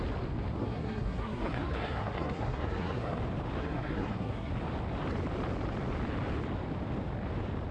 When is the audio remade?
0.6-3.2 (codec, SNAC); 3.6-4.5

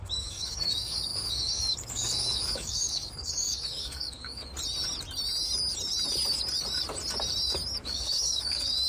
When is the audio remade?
0.0-4.5 (codec, DAC); 7.8-8.9

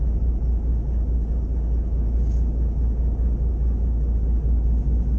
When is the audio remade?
none

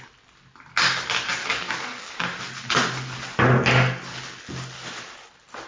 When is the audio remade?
1.4-2.4 (codec, DAC)

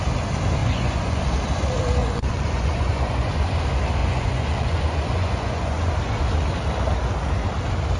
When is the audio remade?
0.6-1.2 (vocoder, Vocos); 2.0-3.6; 4.0-5.9

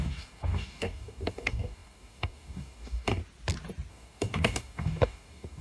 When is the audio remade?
0.0-3.2 (codec, DAC); 3.9-5.6